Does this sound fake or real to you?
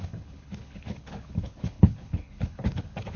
fake